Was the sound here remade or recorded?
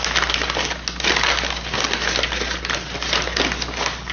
recorded